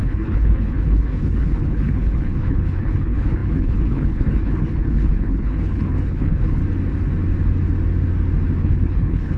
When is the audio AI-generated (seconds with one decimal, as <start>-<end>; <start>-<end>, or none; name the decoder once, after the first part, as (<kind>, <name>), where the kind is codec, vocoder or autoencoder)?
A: 0.0-6.6 (codec, HILCodec); 8.6-9.4